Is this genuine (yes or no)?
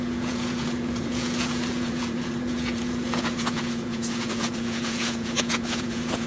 no